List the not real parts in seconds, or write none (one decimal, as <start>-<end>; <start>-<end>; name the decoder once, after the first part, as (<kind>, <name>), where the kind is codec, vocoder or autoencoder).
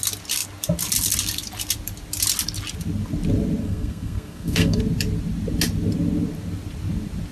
3.6-4.8 (codec, SNAC)